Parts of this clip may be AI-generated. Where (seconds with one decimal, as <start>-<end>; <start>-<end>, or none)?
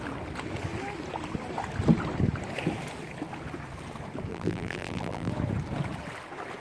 4.3-5.3